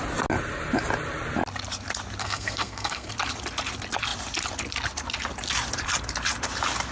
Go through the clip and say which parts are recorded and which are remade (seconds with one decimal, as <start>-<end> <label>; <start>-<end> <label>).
0.0-2.2 recorded; 2.2-3.1 remade; 3.1-6.9 recorded